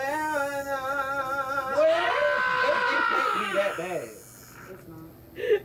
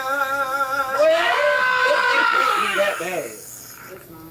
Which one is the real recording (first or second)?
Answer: first